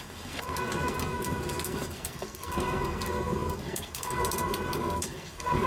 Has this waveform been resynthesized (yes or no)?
yes